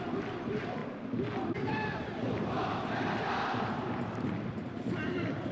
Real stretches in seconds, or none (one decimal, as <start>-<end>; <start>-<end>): 0.8-1.7